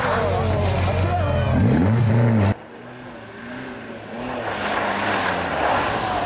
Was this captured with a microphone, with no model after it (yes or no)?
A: yes